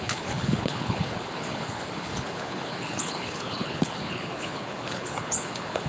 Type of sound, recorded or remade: remade